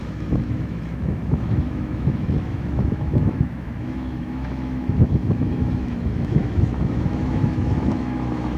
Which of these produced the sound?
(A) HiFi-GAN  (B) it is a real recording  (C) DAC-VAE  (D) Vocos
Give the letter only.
C